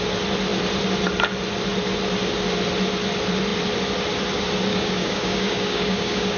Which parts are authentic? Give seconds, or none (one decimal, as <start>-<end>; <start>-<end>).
0.0-4.7